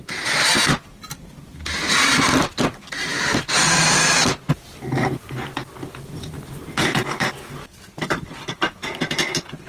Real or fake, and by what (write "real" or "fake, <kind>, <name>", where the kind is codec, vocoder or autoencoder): real